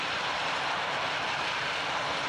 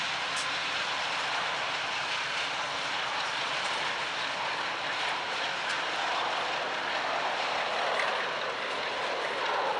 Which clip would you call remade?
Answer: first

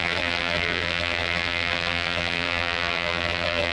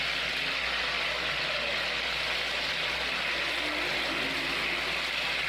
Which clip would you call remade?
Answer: first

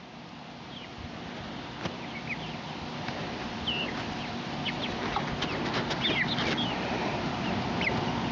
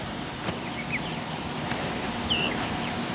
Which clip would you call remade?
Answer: second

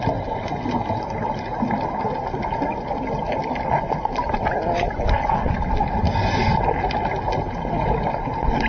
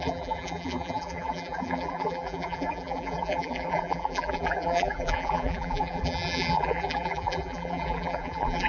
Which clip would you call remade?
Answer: second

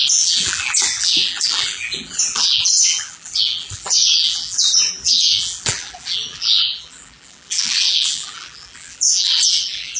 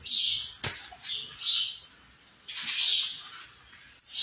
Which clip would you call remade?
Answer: first